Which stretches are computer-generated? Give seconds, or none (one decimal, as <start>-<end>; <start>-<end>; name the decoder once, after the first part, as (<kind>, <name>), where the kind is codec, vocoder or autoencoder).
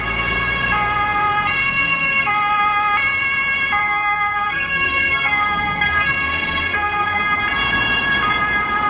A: 1.6-2.3 (codec, SNAC); 3.8-7.4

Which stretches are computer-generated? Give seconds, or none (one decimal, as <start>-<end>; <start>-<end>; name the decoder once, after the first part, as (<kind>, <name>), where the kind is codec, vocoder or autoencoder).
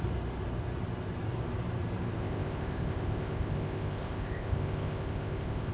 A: 2.2-5.7 (codec, ZipCodec)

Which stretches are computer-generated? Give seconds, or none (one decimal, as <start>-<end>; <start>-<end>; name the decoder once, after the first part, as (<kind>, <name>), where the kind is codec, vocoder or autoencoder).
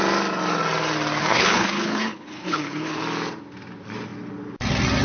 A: 1.2-3.0 (codec, HILCodec)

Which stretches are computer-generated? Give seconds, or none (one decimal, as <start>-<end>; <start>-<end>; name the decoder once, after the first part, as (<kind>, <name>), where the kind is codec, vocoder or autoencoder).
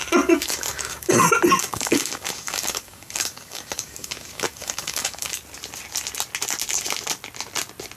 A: 0.0-1.1 (codec, DAC); 1.6-5.4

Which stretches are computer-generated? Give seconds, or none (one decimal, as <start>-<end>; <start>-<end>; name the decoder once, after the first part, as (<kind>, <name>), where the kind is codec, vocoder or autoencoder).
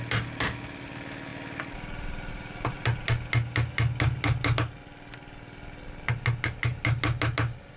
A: none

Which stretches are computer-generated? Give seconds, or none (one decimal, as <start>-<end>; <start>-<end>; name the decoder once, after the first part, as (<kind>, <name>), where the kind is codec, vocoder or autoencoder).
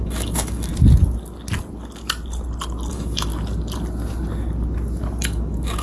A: 0.0-0.7 (autoencoder, DAC-VAE); 2.9-3.3; 5.2-5.8